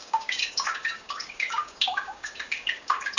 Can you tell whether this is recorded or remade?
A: remade